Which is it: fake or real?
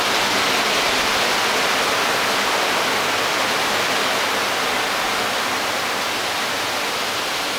real